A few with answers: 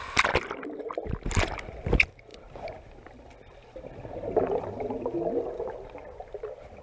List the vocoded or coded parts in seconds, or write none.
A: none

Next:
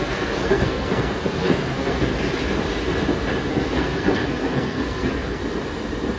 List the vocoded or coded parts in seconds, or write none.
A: 0.0-2.1; 3.5-5.4

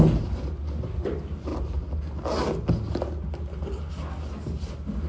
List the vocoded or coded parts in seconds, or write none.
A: none

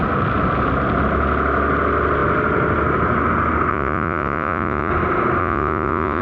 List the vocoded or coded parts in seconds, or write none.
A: 3.7-4.9; 5.4-6.2

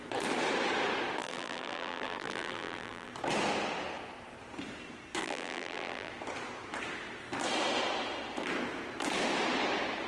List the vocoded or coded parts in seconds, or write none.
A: 1.2-3.1; 5.2-6.1

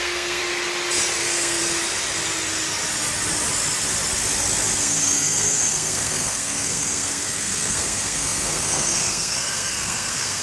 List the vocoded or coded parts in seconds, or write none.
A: 0.0-0.4; 1.2-1.6; 4.8-10.4

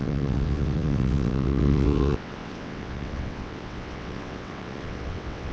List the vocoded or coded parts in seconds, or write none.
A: 0.0-5.5

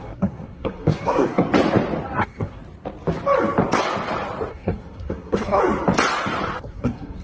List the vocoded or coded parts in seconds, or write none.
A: 0.0-1.5; 2.2-2.6; 4.5-5.6; 6.6-7.2